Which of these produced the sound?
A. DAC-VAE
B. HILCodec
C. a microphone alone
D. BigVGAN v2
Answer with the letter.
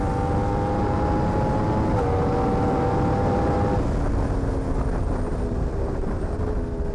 C